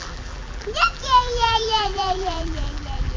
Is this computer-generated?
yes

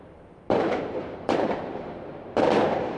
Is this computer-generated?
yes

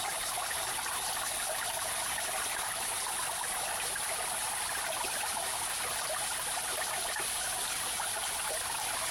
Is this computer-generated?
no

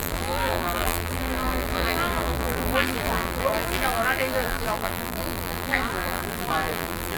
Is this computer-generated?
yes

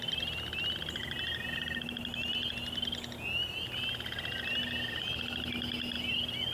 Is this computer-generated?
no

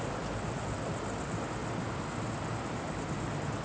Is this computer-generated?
no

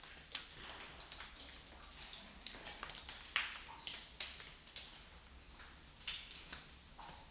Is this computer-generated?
no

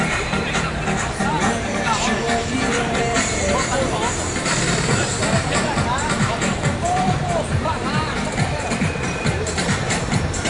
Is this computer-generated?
yes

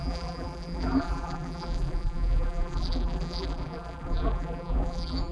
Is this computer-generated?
yes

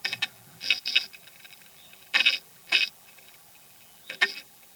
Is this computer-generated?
yes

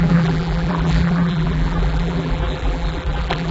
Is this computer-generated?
yes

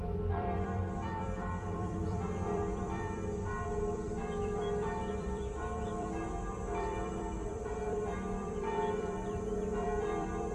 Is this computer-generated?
yes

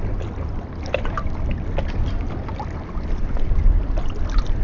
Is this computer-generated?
no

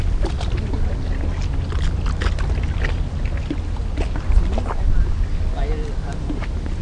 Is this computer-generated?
no